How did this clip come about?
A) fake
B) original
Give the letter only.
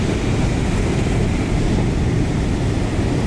B